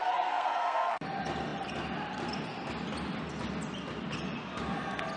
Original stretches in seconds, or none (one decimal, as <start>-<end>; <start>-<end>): 1.0-5.2